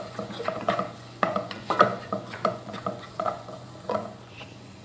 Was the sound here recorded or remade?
remade